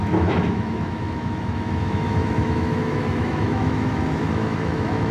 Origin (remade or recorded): remade